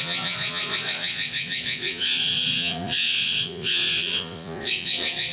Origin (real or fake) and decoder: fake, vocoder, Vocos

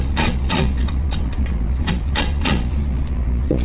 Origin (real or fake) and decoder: fake, vocoder, Vocos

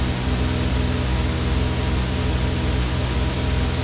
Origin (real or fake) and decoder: real